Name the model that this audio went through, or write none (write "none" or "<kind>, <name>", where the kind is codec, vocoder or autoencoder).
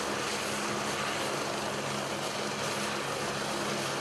none